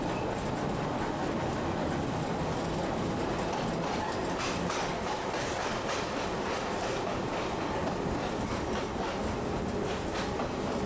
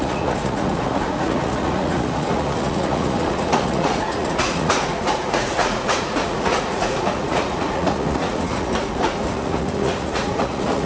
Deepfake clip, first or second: second